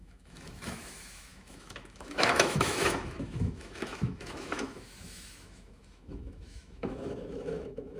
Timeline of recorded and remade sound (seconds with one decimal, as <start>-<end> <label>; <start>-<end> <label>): 0.0-8.0 remade